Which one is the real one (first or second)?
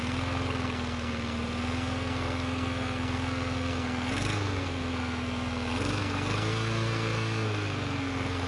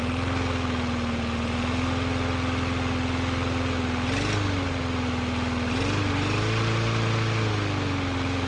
second